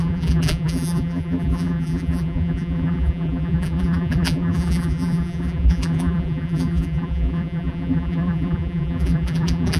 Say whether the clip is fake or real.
fake